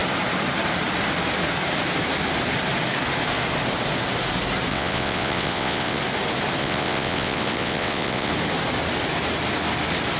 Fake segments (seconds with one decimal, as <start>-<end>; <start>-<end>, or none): 4.7-6.0; 6.6-8.3